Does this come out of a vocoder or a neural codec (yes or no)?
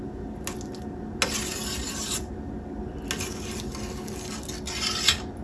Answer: no